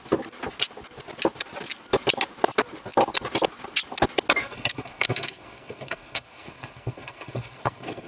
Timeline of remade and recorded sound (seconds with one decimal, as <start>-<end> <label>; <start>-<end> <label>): 0.0-4.4 recorded; 4.4-8.1 remade